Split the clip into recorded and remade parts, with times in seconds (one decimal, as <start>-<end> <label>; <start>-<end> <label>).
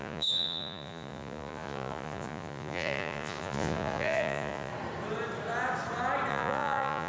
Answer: 0.0-4.7 remade; 4.7-6.3 recorded; 6.3-7.1 remade